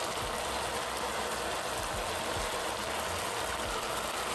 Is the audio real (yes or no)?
yes